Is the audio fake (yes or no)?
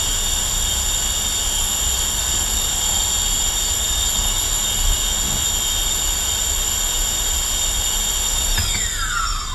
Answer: no